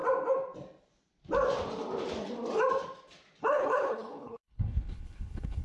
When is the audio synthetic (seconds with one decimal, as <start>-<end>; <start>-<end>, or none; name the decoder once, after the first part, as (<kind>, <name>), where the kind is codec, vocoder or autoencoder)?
3.4-5.6 (codec, HILCodec)